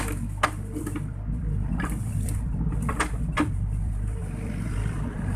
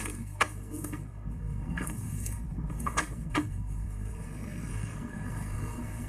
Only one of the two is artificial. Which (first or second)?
second